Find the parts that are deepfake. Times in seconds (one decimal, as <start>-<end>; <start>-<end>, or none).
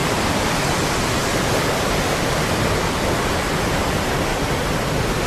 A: 3.2-4.3